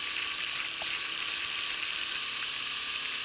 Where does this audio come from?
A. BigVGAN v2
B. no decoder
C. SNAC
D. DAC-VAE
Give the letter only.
B